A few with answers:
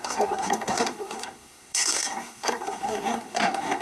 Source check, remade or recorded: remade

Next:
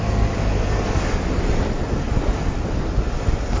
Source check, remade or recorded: recorded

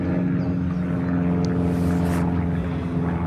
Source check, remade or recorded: recorded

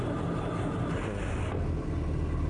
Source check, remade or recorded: recorded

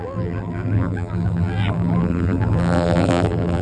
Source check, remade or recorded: remade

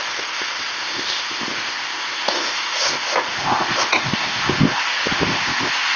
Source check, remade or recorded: remade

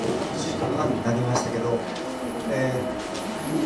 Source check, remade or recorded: recorded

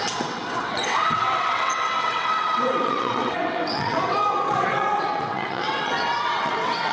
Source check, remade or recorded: remade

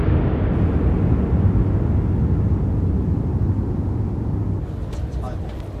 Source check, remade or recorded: recorded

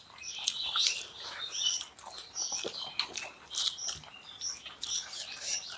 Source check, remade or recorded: recorded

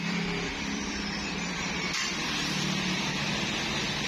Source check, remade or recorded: remade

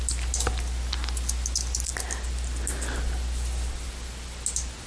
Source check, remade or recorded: recorded